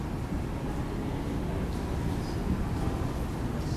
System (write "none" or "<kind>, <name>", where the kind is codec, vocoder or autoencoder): none